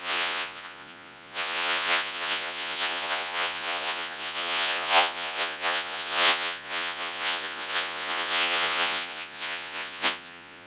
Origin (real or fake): fake